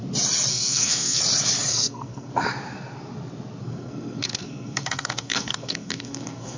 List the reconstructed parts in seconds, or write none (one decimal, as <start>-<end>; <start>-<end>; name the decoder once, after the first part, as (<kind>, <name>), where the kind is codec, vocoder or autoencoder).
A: 0.5-1.2 (codec, SNAC); 1.7-2.3; 3.6-6.6